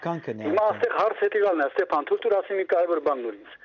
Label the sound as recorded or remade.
recorded